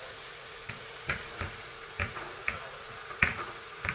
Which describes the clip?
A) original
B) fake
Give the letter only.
B